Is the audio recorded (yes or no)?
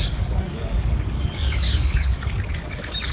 no